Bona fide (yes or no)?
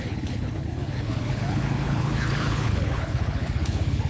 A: no